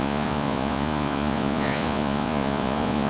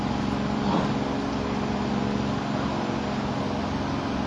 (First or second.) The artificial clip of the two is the first